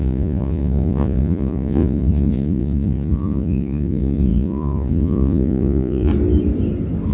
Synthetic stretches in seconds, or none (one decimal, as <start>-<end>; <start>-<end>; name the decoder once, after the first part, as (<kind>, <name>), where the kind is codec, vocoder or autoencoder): 0.0-6.1 (vocoder, Vocos)